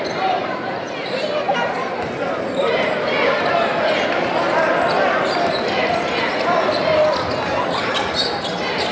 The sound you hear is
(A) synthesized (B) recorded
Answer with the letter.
B